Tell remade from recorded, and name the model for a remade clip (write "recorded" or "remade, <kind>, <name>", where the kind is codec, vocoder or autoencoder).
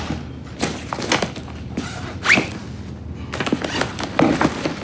recorded